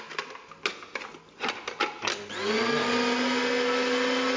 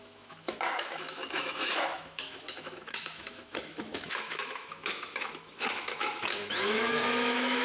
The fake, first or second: second